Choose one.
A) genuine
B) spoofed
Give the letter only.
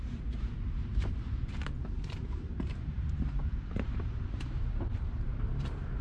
B